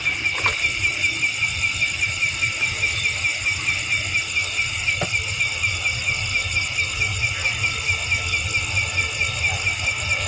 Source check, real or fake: real